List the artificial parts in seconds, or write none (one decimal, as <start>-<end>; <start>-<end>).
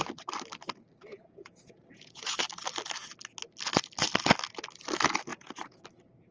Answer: 1.1-2.4; 5.3-5.8